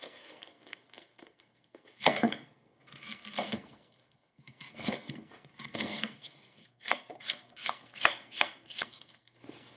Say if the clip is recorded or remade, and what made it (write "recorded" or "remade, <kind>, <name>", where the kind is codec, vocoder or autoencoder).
remade, codec, SNAC